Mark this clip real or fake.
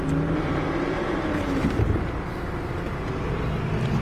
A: real